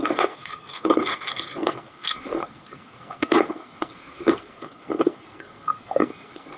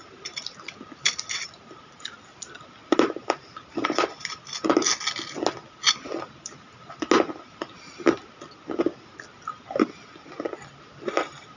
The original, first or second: second